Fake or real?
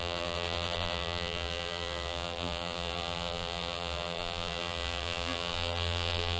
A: fake